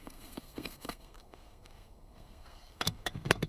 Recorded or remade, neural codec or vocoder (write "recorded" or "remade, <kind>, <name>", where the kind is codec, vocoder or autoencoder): remade, codec, SNAC